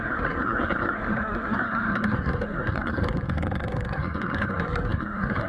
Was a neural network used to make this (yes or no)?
yes